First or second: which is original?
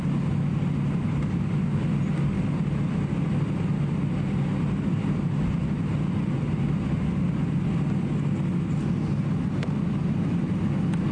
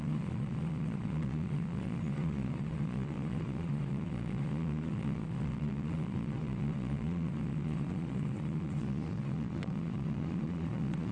first